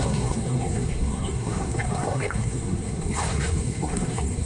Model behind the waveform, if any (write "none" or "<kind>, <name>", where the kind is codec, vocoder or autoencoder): codec, SNAC